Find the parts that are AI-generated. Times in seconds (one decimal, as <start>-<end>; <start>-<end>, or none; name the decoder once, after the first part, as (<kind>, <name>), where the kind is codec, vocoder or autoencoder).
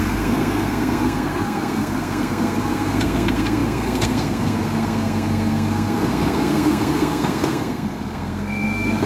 0.0-9.1 (codec, SNAC)